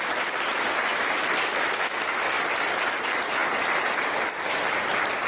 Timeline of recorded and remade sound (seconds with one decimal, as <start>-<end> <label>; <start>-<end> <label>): 0.0-5.3 recorded